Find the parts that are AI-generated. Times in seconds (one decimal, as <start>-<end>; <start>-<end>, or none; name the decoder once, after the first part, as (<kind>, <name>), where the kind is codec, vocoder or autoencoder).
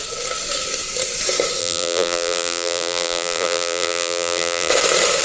1.6-4.7 (vocoder, BigVGAN v2)